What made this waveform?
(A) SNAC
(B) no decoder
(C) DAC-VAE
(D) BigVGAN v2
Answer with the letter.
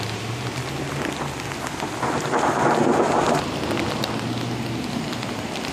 B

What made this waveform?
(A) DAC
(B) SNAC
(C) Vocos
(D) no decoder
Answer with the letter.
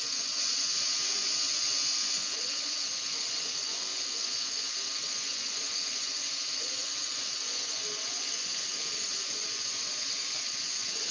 C